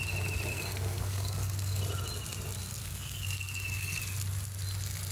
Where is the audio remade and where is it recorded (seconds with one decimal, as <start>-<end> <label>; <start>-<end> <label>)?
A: 0.0-0.5 recorded; 0.5-1.8 remade; 1.8-2.8 recorded; 2.8-4.0 remade; 4.0-5.1 recorded